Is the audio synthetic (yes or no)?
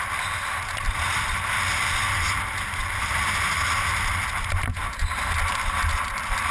no